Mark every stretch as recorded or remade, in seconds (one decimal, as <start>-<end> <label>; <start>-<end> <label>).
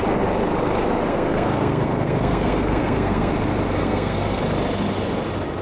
0.0-1.1 recorded; 1.1-3.3 remade; 3.3-3.8 recorded; 3.8-4.4 remade; 4.4-5.6 recorded